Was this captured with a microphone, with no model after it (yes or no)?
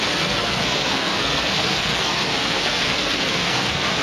no